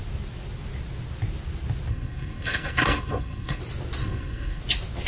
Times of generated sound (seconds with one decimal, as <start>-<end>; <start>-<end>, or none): 1.9-3.6; 4.0-4.6